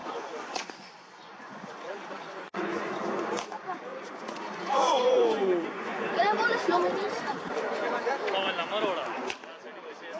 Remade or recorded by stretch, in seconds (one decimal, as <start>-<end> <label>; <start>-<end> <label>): 0.0-3.3 remade; 3.3-3.9 recorded; 3.9-8.1 remade; 8.1-10.2 recorded